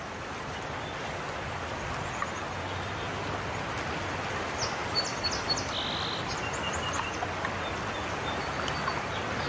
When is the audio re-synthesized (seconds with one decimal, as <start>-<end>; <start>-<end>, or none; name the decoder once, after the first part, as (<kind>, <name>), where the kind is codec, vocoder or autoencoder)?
none